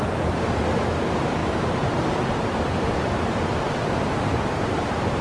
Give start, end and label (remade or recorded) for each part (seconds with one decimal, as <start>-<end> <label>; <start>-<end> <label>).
0.0-5.2 remade